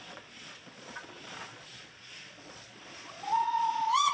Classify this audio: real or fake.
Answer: fake